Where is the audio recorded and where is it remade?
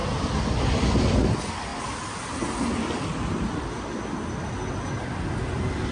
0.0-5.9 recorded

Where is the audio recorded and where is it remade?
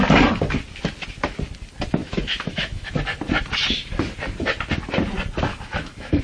0.0-2.0 recorded; 2.0-2.9 remade; 2.9-5.5 recorded; 5.5-6.2 remade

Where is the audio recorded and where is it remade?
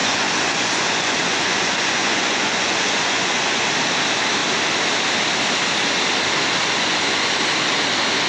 0.0-3.7 remade; 3.7-6.6 recorded; 6.6-7.3 remade; 7.3-8.3 recorded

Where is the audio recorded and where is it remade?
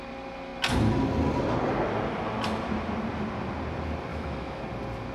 0.0-4.1 recorded; 4.1-4.6 remade; 4.6-5.1 recorded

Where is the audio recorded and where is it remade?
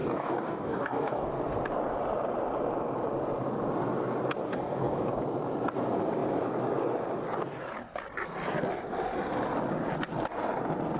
0.0-1.3 remade; 1.3-4.4 recorded; 4.4-5.2 remade; 5.2-11.0 recorded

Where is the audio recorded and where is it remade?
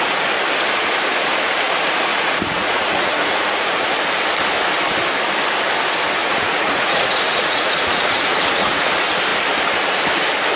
0.0-2.1 recorded; 2.1-3.9 remade; 3.9-6.2 recorded; 6.2-8.9 remade; 8.9-10.6 recorded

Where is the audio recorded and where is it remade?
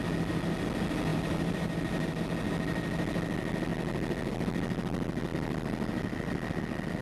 0.0-1.1 recorded; 1.1-2.2 remade; 2.2-5.3 recorded; 5.3-6.6 remade; 6.6-7.0 recorded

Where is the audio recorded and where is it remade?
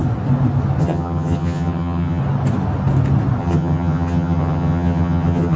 0.0-0.8 recorded; 0.8-2.2 remade; 2.2-3.4 recorded; 3.4-5.6 remade